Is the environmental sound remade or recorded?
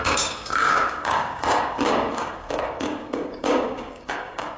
remade